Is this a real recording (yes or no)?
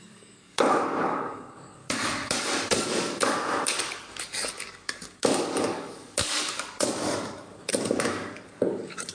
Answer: no